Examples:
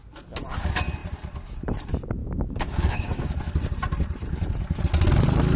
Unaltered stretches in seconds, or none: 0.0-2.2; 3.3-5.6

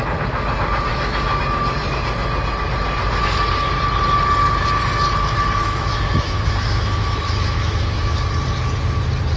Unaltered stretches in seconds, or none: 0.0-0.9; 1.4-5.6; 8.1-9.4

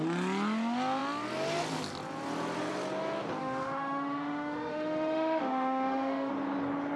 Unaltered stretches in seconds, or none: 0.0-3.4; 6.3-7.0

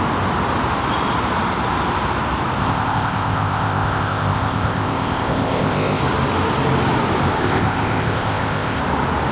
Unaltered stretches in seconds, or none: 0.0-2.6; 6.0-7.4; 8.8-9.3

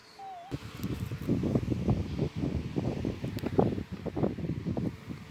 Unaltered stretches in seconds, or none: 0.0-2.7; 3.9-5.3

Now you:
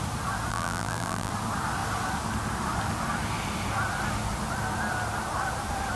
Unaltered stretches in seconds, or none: 0.0-0.5; 1.3-6.0

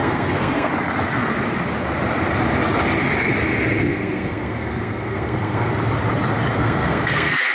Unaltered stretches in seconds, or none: 0.7-3.9; 5.7-6.5

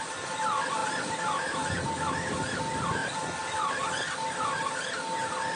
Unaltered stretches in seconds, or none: 0.0-0.8; 1.9-5.6